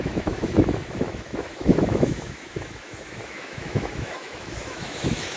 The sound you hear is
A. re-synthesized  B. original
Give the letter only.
A